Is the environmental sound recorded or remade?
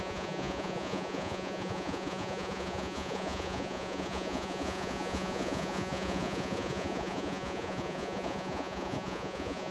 remade